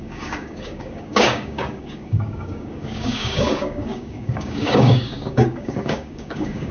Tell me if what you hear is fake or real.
fake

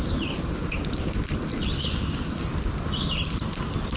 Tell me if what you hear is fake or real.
real